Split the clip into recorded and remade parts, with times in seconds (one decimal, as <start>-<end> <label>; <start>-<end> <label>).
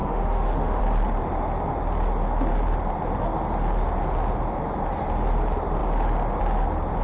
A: 0.0-0.8 remade; 0.8-7.0 recorded